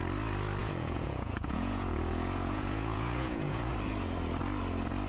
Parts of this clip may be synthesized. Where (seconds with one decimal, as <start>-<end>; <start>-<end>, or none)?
0.6-3.7